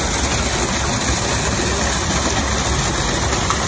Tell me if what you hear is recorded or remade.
recorded